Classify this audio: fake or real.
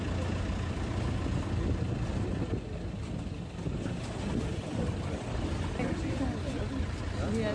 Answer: real